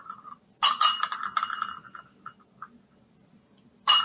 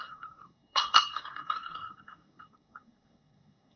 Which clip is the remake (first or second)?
second